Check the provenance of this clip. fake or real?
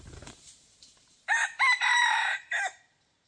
fake